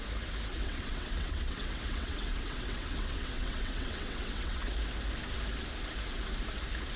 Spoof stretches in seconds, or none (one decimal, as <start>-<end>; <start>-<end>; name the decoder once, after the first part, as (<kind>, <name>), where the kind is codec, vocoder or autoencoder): 0.5-4.7 (vocoder, WaveNeXt)